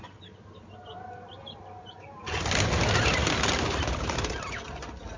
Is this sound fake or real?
real